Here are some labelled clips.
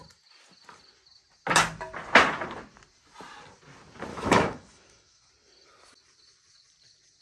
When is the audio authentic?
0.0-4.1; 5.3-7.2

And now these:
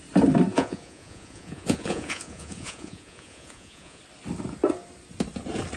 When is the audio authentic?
0.0-0.5; 4.0-5.8

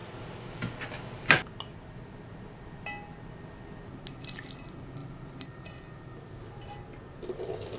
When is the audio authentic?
0.0-7.8

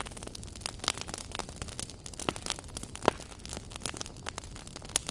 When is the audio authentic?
0.0-5.1

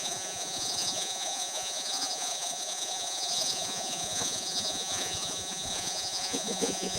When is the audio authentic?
none

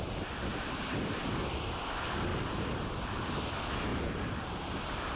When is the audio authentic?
0.0-0.5; 1.4-2.3; 3.0-3.9